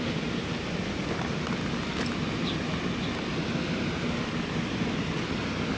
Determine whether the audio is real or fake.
real